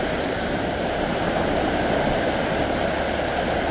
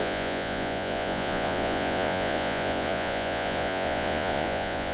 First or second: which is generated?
second